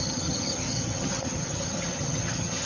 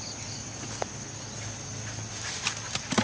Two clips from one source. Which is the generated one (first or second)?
first